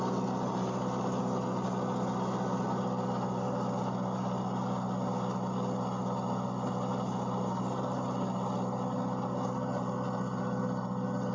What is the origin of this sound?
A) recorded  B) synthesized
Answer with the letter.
A